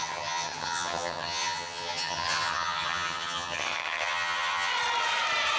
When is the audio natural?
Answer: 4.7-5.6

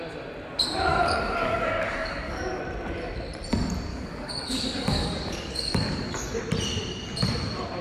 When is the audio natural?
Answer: 0.0-0.9; 2.6-3.9; 6.4-7.8

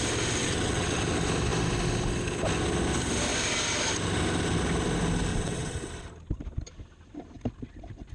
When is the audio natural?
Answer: 0.0-0.4; 1.0-5.3; 5.9-8.1

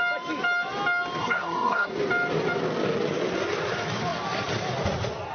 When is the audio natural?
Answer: 0.0-1.2; 1.9-5.3

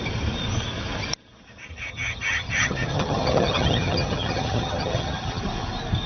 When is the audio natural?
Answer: 0.0-1.7; 5.4-6.1

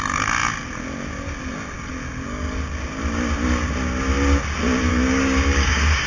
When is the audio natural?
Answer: 0.0-4.9

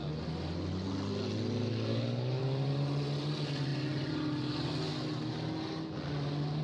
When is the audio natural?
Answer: 0.0-1.9; 2.4-6.6